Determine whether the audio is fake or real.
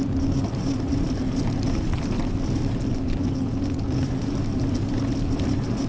real